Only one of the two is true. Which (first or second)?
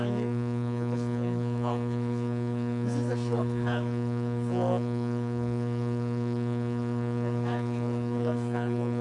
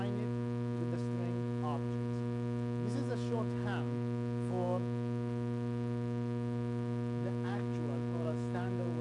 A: second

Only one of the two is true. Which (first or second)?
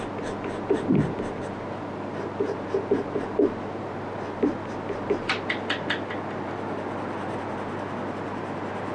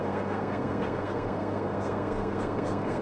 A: first